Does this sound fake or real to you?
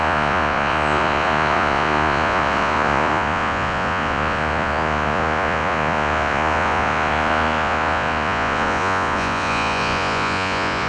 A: fake